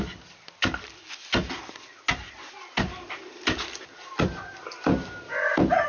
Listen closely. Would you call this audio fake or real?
real